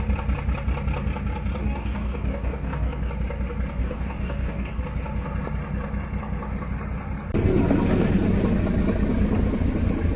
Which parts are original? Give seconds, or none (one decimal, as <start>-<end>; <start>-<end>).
0.0-1.6; 3.1-3.8; 4.8-10.2